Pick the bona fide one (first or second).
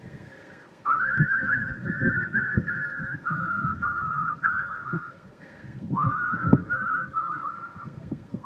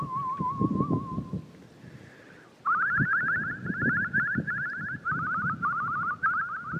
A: second